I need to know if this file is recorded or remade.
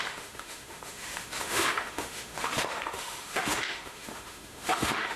remade